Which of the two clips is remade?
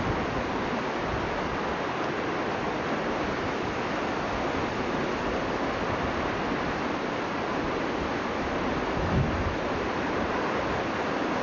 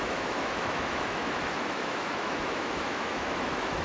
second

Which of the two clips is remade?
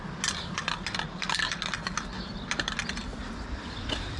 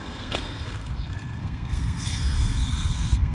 second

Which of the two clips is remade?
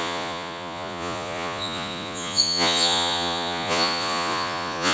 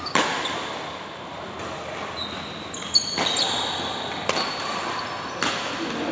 first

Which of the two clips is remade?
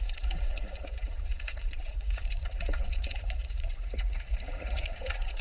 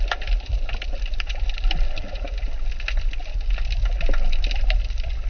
first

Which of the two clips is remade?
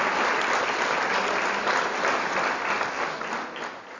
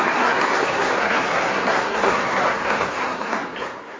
second